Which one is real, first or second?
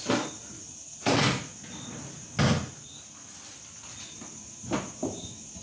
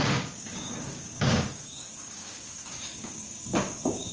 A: first